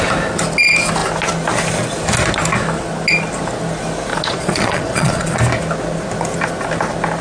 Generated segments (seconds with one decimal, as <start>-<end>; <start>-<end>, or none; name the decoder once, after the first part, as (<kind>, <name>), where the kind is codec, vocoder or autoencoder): 4.1-5.4 (vocoder, Vocos)